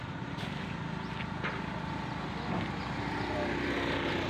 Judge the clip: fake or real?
real